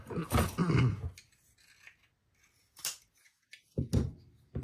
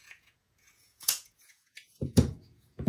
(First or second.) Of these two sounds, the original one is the first